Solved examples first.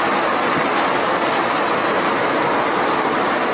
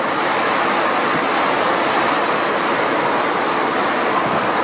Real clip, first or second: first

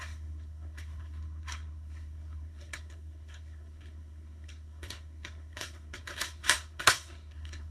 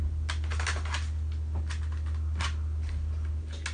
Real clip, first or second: second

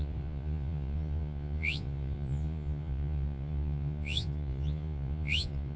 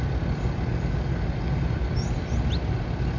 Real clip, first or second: second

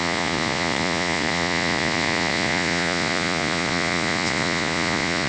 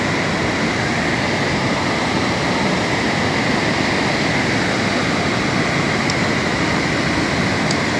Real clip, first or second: second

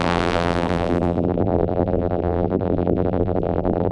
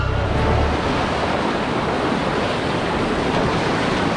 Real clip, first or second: second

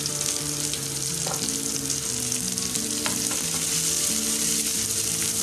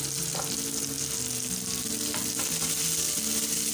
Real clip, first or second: second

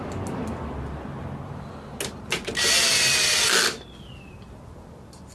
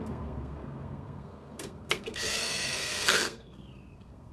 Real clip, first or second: first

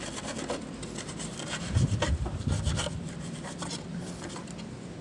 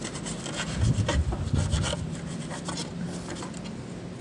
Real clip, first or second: second